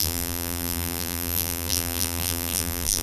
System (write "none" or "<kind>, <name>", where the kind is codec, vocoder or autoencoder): vocoder, BigVGAN v2